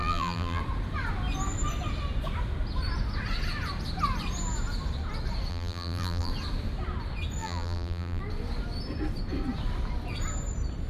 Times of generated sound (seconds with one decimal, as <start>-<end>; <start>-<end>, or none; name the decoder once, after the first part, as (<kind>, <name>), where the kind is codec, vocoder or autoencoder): 0.0-0.6 (vocoder, BigVGAN v2); 5.5-6.3; 7.4-8.2